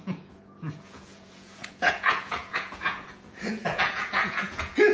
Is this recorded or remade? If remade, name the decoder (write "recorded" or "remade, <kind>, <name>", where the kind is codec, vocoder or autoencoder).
remade, vocoder, Vocos